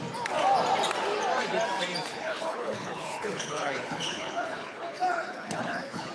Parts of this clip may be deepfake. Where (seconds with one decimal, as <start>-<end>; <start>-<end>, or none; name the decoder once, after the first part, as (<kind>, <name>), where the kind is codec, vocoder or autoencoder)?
2.1-6.1 (codec, HILCodec)